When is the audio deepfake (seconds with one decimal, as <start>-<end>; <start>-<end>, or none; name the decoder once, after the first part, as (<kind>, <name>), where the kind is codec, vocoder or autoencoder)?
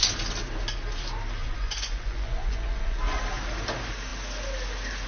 1.4-3.2 (vocoder, Vocos)